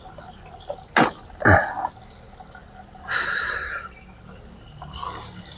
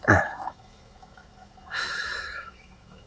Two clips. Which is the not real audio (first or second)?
second